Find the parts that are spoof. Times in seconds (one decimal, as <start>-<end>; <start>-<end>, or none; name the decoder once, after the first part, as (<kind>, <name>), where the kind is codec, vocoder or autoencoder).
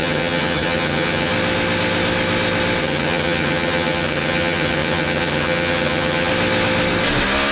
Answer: 0.0-1.3 (vocoder, HiFi-GAN); 2.8-6.3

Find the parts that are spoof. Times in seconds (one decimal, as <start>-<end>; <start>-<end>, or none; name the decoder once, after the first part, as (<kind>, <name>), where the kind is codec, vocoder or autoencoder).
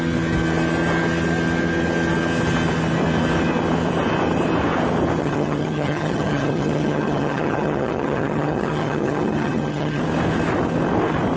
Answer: 5.2-10.0 (vocoder, HiFi-GAN)